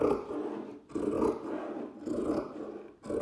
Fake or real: real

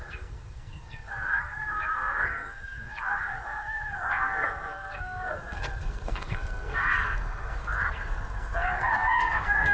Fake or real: fake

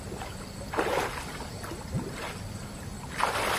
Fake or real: real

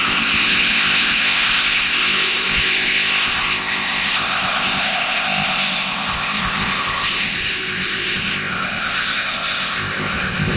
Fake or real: fake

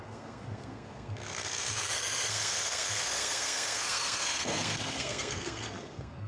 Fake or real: fake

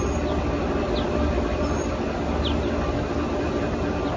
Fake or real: real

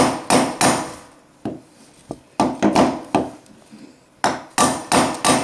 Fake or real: real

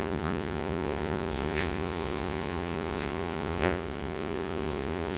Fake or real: fake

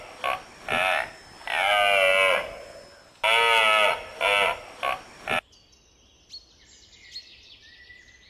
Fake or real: real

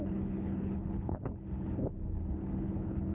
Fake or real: fake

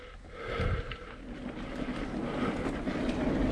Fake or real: real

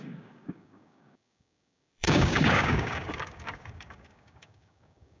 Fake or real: fake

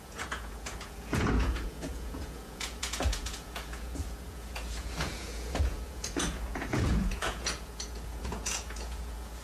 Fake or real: fake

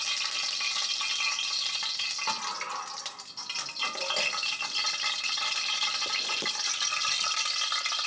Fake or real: real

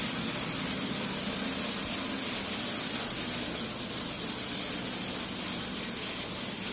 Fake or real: real